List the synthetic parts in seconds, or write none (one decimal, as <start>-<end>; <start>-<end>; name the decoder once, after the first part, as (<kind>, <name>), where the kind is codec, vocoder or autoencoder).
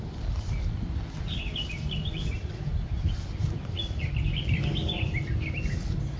2.3-4.1 (vocoder, BigVGAN v2); 4.8-5.6